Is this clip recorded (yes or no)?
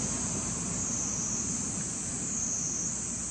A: yes